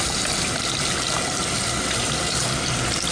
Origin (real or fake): real